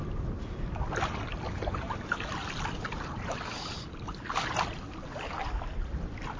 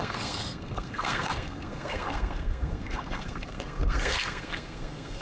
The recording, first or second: first